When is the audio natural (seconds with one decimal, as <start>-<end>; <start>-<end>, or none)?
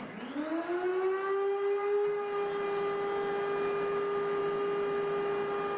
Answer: 0.0-5.8